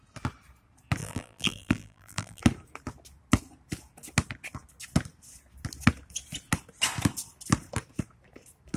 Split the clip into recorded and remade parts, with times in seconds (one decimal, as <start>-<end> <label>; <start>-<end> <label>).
0.0-1.0 recorded; 1.0-2.4 remade; 2.4-8.8 recorded